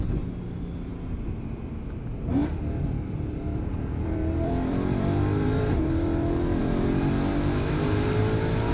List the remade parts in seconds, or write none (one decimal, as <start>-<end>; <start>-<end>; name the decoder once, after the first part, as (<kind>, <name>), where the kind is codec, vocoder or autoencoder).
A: 2.4-6.6 (vocoder, BigVGAN v2)